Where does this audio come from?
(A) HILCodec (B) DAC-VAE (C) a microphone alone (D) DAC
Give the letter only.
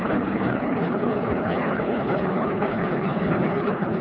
A